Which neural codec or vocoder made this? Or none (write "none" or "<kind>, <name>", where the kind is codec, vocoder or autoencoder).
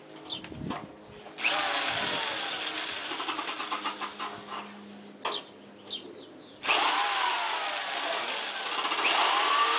none